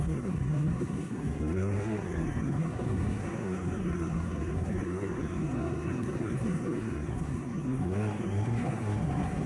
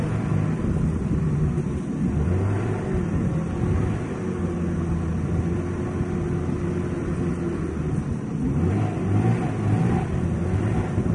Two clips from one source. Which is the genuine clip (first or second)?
second